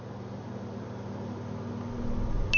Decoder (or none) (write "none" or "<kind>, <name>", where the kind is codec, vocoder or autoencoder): none